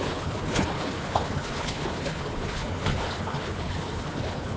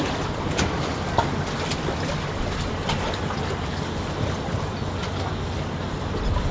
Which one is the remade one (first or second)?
first